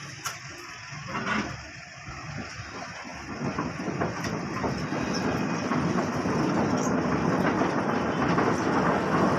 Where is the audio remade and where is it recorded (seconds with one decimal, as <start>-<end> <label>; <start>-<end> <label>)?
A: 0.0-9.4 recorded